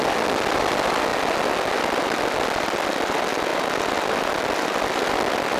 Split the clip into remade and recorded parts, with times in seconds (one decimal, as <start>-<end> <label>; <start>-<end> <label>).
0.0-5.6 recorded